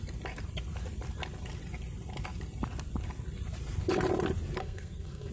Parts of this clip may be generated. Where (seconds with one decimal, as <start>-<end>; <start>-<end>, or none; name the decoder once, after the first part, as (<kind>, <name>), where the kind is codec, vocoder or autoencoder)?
4.6-5.3 (codec, SNAC)